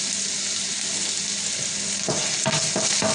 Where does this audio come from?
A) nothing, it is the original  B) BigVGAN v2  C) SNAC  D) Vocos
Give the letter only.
A